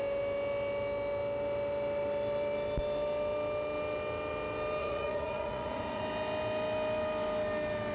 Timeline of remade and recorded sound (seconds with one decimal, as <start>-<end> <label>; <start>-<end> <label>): 0.0-4.8 recorded; 4.8-6.0 remade; 6.0-7.9 recorded